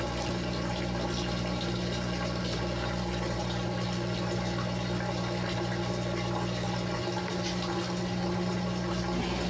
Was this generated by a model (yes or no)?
no